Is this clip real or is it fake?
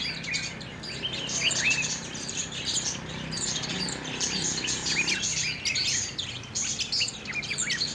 real